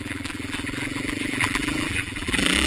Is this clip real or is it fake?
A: fake